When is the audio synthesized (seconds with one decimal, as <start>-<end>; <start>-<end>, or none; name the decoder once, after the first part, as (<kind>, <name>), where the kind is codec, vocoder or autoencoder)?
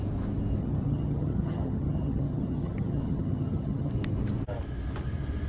0.6-3.9 (vocoder, HiFi-GAN)